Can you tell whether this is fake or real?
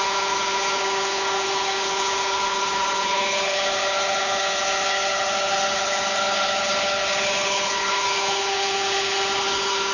fake